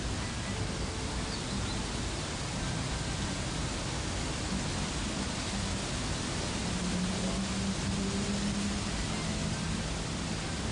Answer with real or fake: real